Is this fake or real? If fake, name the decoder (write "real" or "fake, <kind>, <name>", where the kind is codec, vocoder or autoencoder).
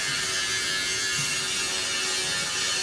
real